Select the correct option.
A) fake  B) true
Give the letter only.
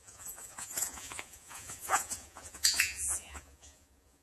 A